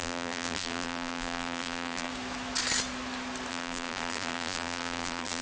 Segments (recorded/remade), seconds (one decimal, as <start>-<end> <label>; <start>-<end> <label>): 0.0-2.1 remade; 2.1-3.5 recorded; 3.5-5.4 remade